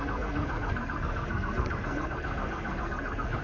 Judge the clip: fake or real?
fake